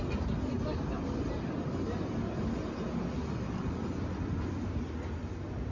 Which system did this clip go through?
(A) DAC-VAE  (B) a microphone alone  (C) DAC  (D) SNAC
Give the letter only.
B